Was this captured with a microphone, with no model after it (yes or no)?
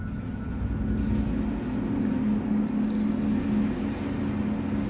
yes